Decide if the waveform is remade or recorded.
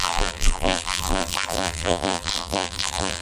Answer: remade